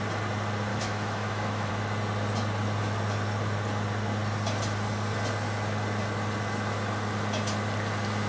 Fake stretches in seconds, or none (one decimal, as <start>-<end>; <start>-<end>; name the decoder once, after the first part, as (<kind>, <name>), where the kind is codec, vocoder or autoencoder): 0.7-1.7 (autoencoder, DAC-VAE)